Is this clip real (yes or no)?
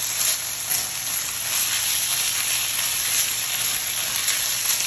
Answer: yes